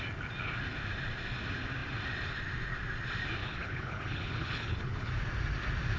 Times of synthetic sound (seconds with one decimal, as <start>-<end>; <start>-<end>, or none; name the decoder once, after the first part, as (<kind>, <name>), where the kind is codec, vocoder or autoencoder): 3.4-5.1 (codec, HILCodec)